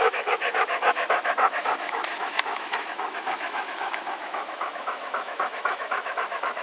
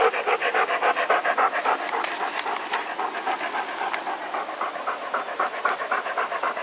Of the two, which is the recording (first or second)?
second